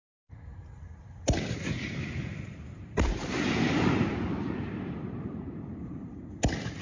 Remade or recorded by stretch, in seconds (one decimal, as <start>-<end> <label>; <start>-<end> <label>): 0.0-2.3 recorded; 2.3-6.1 remade; 6.1-6.8 recorded